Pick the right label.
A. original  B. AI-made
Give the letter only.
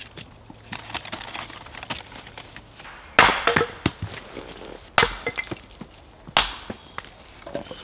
A